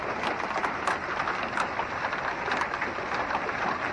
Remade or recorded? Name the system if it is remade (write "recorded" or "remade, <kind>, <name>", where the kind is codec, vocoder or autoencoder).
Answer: recorded